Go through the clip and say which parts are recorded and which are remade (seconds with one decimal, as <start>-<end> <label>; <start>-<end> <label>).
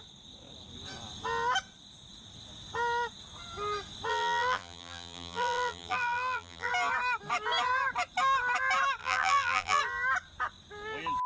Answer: 0.0-4.1 recorded; 4.1-6.7 remade; 6.7-9.0 recorded; 9.0-9.8 remade; 9.8-11.3 recorded